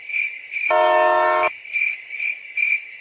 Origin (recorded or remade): recorded